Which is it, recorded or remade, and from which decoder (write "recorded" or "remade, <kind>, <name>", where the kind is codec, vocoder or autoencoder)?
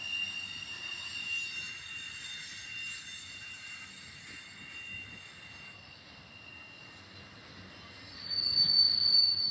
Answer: recorded